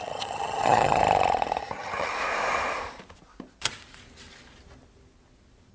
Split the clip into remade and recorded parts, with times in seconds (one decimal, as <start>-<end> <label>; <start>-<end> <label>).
0.0-1.0 remade; 1.0-1.6 recorded; 1.6-2.1 remade; 2.1-5.7 recorded